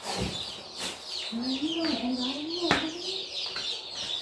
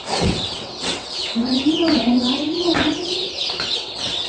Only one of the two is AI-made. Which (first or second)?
second